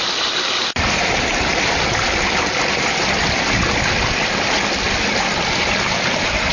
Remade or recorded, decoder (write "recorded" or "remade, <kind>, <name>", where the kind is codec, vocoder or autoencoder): remade, vocoder, BigVGAN v2